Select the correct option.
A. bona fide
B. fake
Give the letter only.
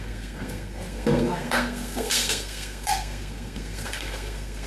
B